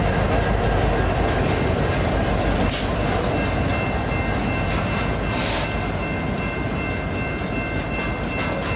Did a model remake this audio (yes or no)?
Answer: no